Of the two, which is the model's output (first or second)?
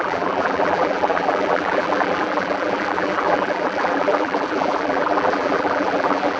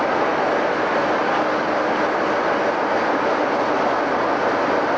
first